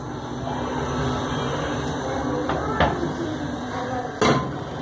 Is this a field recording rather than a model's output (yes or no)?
yes